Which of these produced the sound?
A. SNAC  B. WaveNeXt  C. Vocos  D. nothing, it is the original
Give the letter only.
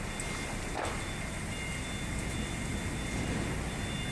D